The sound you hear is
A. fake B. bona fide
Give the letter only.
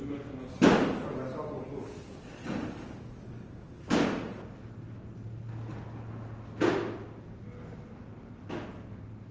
B